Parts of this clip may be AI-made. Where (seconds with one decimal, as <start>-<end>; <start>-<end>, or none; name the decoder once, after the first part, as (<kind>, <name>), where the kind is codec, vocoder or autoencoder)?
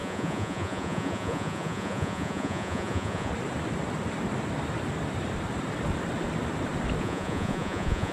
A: 0.0-3.3 (vocoder, Vocos); 7.0-8.1